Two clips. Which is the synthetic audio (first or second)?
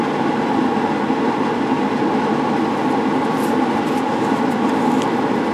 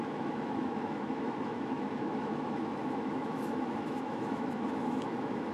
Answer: second